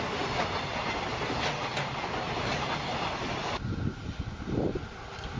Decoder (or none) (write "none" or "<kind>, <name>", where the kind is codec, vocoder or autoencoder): none